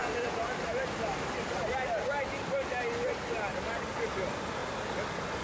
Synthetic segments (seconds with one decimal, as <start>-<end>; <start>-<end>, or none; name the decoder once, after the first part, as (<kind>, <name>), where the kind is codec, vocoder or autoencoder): none